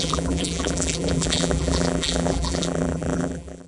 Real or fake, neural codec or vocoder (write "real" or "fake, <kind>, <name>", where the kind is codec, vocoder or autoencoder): fake, vocoder, BigVGAN v2